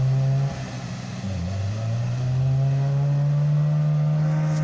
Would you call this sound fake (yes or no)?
no